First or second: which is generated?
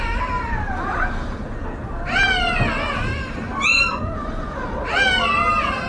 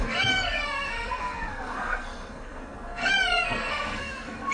second